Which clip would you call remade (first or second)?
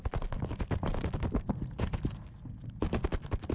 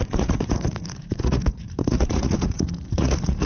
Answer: second